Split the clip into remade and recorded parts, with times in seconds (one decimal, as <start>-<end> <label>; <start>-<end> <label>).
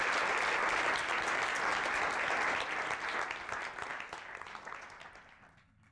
0.0-5.9 recorded